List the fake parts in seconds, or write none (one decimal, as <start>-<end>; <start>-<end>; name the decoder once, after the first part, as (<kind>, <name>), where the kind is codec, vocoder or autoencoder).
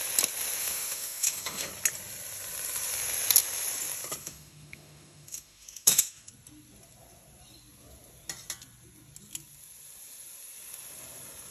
0.6-1.7 (autoencoder, DAC-VAE); 4.2-6.3